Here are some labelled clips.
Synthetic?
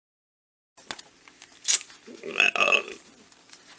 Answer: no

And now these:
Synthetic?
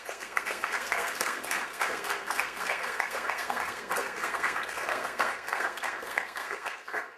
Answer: yes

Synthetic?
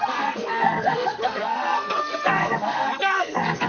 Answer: yes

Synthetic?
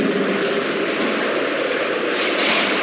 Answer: no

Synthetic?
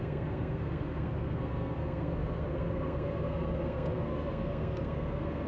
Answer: yes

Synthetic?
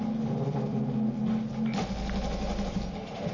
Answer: no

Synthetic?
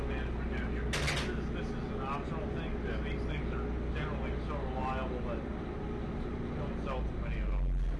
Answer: no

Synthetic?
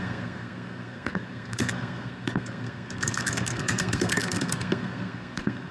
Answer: yes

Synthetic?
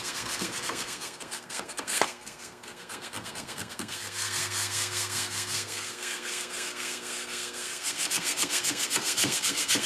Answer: yes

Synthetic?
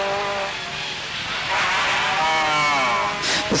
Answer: no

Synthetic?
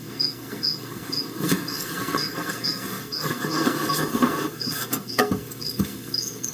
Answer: yes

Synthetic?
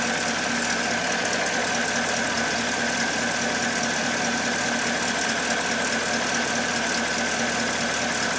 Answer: no